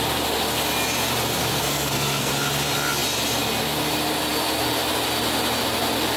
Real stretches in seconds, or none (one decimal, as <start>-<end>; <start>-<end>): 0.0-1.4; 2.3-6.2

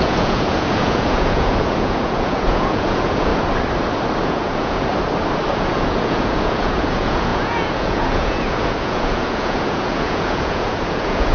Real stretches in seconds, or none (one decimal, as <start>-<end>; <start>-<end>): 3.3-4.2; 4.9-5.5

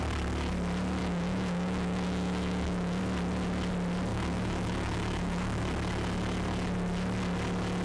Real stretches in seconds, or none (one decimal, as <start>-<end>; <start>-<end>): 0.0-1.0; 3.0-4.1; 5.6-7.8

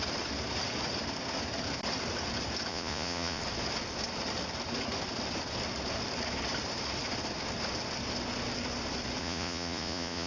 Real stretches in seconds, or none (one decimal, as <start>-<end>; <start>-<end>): 0.0-2.7; 3.4-9.2